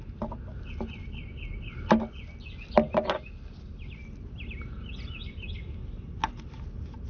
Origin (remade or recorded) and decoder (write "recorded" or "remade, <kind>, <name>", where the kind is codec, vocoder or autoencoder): recorded